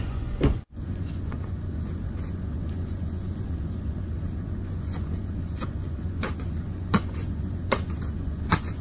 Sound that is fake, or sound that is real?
fake